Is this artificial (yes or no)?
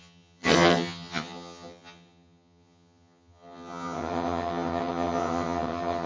yes